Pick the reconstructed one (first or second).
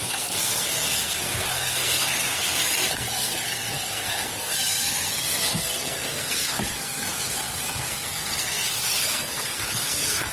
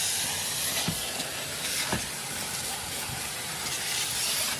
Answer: first